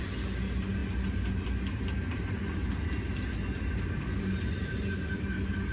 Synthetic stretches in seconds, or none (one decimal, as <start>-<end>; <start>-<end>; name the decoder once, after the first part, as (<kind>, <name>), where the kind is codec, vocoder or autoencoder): none